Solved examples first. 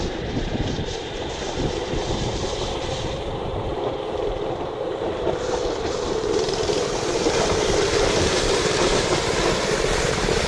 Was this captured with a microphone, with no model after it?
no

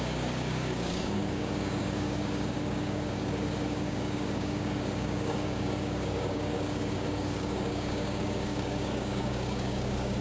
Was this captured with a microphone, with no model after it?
no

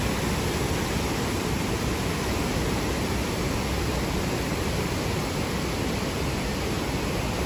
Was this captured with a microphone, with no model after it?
yes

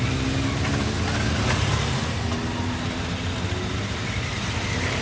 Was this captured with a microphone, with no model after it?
yes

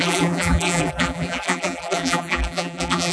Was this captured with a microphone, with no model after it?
no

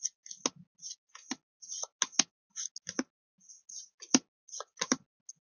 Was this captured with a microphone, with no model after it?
yes